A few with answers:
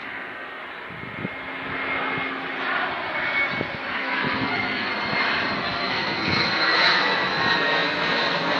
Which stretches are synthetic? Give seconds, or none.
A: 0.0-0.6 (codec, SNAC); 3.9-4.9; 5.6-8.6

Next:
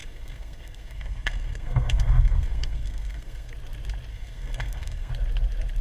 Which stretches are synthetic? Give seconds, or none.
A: 0.0-3.5 (codec, SNAC); 4.1-5.1

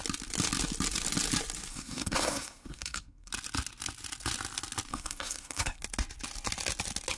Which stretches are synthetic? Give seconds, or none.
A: 1.7-3.3 (codec, SNAC); 4.9-5.8

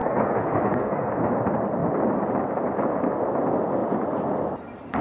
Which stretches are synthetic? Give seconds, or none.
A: 0.0-1.1 (codec, SNAC)

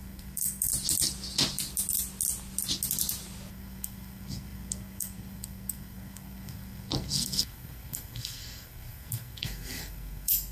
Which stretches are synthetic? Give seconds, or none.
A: 0.0-0.7 (codec, SNAC); 3.5-10.5